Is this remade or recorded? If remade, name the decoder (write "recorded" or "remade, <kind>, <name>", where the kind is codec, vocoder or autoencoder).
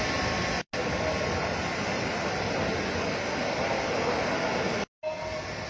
recorded